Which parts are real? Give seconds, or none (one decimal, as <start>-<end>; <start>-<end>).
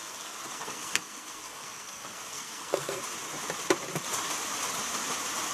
3.0-5.5